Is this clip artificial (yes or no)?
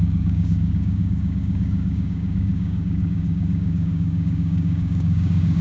yes